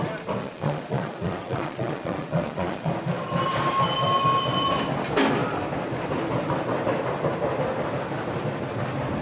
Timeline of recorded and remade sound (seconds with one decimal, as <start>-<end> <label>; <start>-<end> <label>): 0.0-0.4 recorded; 0.4-2.9 remade; 2.9-9.2 recorded

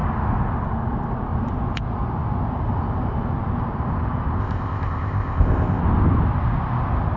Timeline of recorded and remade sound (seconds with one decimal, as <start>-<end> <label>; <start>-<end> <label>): 0.0-4.4 recorded; 4.4-5.8 remade; 5.8-7.2 recorded

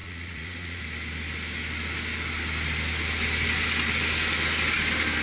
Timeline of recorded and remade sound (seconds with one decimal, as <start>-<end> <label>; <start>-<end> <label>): 0.0-0.8 remade; 0.8-5.2 recorded

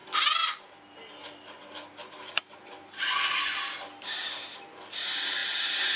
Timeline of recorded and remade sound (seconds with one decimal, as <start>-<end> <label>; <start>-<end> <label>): 0.0-6.0 recorded

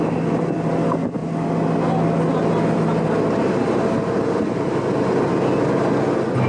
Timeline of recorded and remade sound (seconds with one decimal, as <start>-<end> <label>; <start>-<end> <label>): 0.0-6.5 recorded